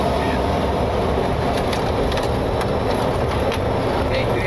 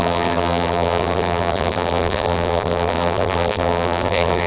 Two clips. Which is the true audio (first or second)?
first